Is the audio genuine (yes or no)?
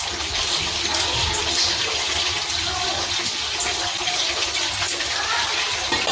yes